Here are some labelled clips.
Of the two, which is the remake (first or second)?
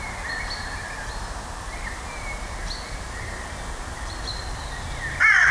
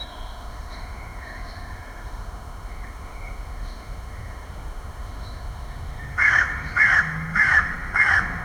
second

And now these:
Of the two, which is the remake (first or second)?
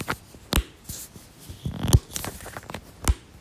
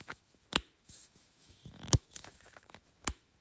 second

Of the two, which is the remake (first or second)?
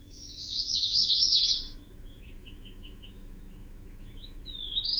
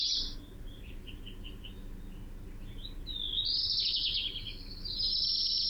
first